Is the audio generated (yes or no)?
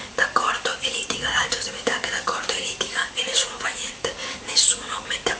yes